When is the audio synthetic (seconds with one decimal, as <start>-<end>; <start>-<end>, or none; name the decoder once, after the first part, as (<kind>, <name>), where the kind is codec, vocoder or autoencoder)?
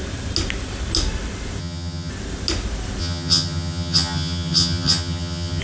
1.6-2.1 (vocoder, HiFi-GAN); 3.0-5.6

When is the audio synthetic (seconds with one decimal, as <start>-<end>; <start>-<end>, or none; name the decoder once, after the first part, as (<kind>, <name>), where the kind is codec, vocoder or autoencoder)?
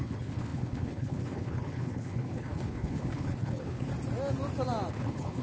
0.0-3.9 (codec, HILCodec); 4.9-5.4